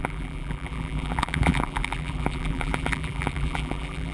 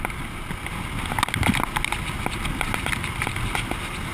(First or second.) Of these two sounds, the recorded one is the second